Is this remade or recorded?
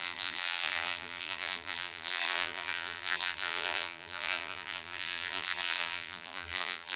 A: remade